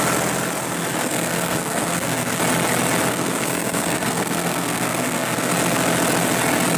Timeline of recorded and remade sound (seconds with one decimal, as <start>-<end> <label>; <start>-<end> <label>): 0.0-1.0 recorded; 1.0-2.4 remade; 2.4-3.1 recorded; 3.1-5.5 remade; 5.5-6.8 recorded